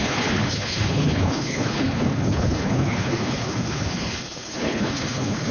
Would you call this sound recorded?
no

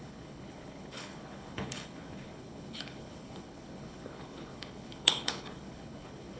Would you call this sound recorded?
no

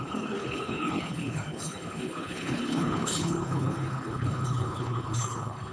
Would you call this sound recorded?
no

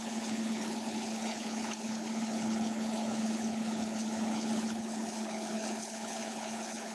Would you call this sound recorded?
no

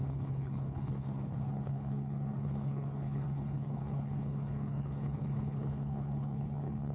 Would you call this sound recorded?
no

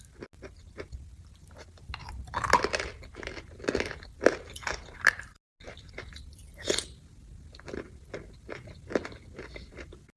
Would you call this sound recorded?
yes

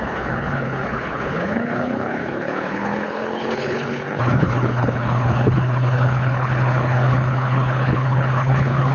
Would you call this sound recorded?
no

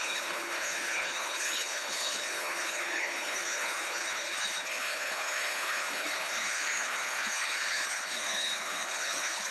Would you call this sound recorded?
no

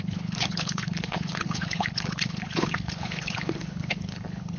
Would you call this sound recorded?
no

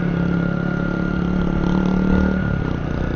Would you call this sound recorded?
yes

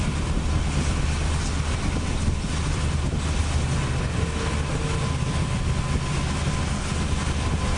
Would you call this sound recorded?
yes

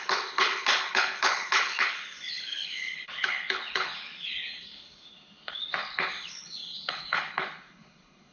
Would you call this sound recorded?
no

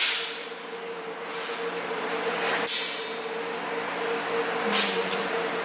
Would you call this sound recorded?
yes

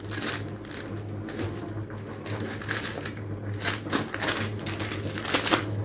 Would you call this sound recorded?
yes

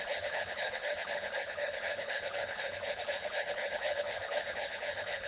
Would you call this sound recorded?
no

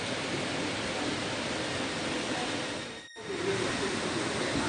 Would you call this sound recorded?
yes